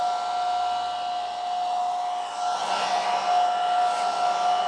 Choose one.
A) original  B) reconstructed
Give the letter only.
A